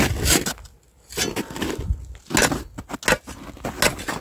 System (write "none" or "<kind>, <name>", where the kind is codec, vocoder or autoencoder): none